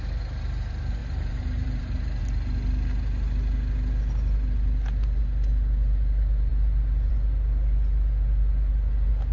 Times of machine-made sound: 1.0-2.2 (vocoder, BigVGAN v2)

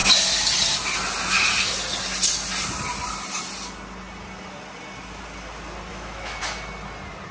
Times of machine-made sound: 5.9-6.4 (autoencoder, DAC-VAE)

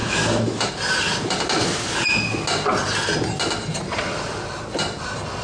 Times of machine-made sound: 0.0-0.7 (autoencoder, DAC-VAE)

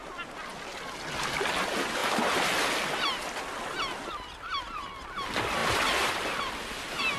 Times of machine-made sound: 5.6-6.1 (vocoder, BigVGAN v2)

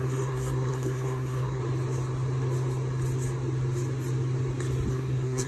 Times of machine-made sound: 0.0-1.6 (codec, SNAC); 4.9-5.5